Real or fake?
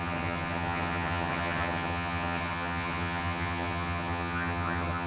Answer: fake